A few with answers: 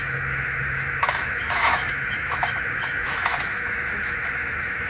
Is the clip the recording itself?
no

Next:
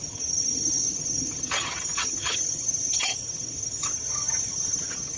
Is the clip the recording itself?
no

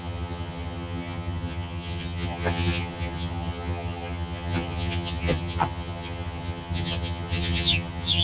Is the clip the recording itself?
no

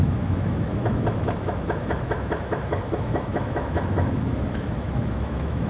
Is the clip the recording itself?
no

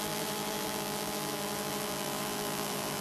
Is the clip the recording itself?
no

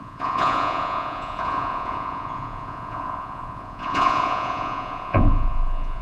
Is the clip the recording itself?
no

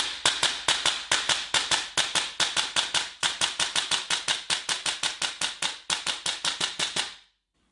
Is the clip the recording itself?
yes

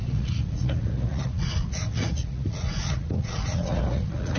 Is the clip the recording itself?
no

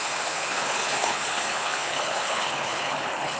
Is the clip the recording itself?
no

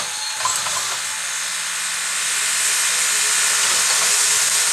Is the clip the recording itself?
yes